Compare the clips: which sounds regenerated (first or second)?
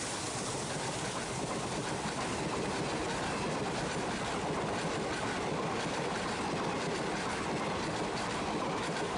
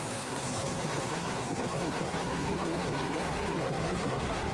second